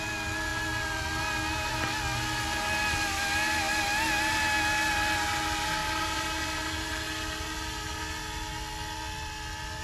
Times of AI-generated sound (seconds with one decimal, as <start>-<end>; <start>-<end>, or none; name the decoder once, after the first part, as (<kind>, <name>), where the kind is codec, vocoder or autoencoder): 5.8-7.0 (vocoder, BigVGAN v2)